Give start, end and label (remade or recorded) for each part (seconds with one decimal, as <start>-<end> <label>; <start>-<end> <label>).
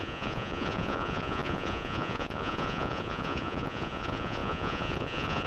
0.0-5.5 remade